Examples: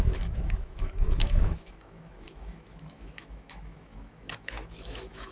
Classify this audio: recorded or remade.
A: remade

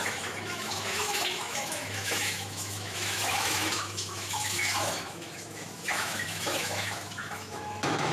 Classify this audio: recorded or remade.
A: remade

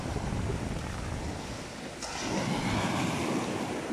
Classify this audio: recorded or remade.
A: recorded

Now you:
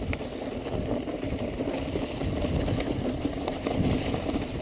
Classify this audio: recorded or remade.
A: recorded